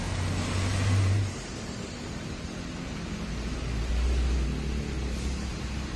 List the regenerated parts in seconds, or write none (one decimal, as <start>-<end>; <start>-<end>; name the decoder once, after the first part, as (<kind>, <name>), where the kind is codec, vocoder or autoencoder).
0.7-3.9 (vocoder, BigVGAN v2)

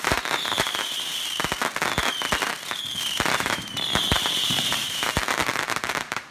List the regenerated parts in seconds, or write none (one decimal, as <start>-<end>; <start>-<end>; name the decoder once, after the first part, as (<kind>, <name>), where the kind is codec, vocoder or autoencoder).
0.0-1.1 (vocoder, BigVGAN v2); 2.5-6.3

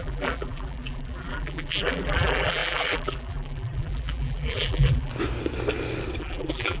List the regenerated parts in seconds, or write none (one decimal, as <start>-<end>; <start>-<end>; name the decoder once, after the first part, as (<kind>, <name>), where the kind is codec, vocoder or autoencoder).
0.0-5.1 (vocoder, BigVGAN v2); 6.2-6.8

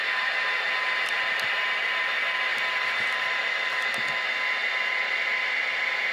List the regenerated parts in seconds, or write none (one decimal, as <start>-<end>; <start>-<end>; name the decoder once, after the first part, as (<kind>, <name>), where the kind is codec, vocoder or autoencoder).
2.5-3.1 (vocoder, BigVGAN v2)

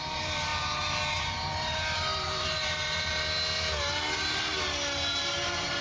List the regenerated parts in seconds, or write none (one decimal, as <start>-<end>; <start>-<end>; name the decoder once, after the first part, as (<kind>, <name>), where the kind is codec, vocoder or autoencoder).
0.0-3.1 (vocoder, BigVGAN v2); 4.6-5.8

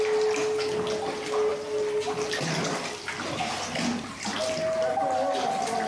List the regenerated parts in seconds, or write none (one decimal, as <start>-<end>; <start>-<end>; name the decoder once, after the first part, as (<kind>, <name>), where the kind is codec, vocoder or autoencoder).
none

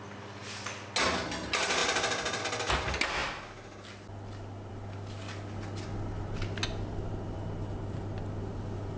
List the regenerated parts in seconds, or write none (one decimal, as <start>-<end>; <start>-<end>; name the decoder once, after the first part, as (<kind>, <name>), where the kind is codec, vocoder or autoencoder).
none

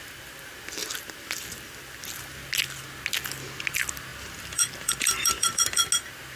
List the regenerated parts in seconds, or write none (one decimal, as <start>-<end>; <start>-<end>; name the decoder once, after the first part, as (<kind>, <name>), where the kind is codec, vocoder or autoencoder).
0.8-2.1 (vocoder, BigVGAN v2); 4.1-5.9